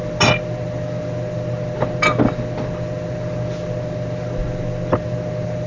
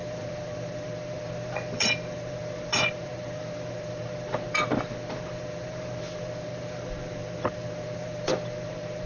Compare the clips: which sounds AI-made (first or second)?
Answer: second